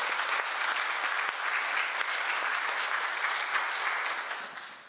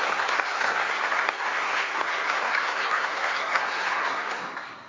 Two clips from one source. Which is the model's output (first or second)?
second